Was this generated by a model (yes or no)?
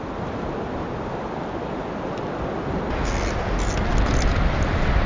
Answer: no